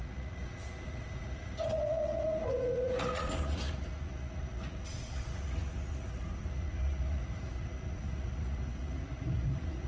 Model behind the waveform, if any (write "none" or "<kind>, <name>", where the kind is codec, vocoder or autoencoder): vocoder, Vocos